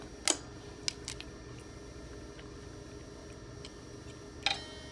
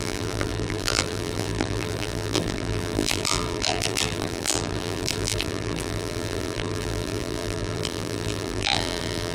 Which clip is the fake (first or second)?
second